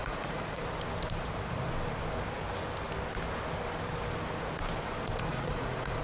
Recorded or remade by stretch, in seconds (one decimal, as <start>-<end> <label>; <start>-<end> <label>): 0.0-0.6 remade; 0.6-5.3 recorded; 5.3-6.0 remade